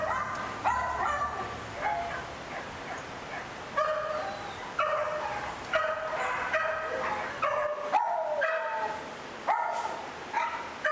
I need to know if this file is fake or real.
real